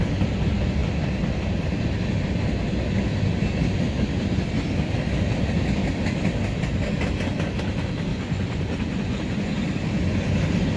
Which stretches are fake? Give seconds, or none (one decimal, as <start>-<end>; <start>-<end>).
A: 8.1-9.5